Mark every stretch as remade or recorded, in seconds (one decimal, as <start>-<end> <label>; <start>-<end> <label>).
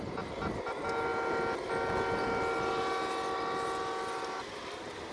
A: 0.0-5.1 recorded